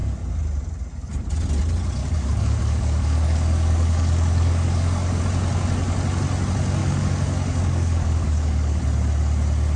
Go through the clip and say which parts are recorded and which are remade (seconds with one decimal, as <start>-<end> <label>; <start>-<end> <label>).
0.0-2.0 recorded; 2.0-5.2 remade; 5.2-6.8 recorded; 6.8-8.8 remade; 8.8-9.8 recorded